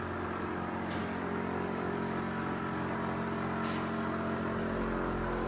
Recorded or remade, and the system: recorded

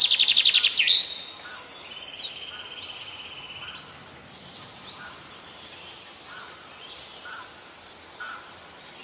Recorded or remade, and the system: recorded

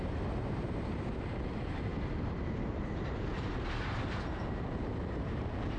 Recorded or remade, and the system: remade, vocoder, BigVGAN v2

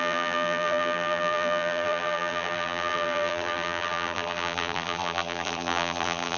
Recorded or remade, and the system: remade, vocoder, BigVGAN v2